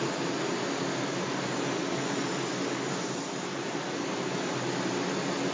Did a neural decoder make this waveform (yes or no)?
no